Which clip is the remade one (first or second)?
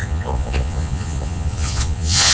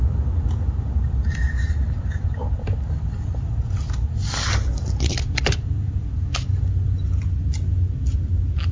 first